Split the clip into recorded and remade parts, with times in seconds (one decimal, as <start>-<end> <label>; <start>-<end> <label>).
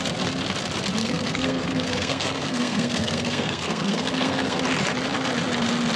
0.0-1.0 recorded; 1.0-4.6 remade; 4.6-6.0 recorded